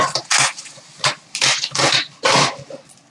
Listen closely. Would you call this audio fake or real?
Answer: real